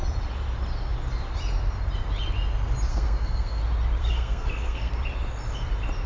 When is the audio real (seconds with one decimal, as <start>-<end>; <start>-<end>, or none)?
0.0-2.9; 3.6-4.0; 4.9-6.1